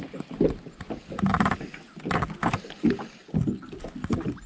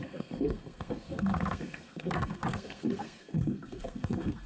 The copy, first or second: second